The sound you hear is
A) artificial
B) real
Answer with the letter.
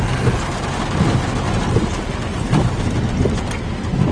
B